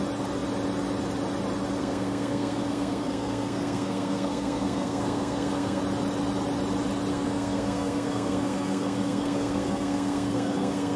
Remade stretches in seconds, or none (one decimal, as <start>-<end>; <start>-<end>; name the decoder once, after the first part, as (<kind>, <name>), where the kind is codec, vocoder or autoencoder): 1.8-5.8 (codec, SNAC); 7.1-11.0